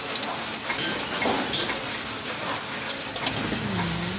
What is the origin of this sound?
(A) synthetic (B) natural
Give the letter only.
B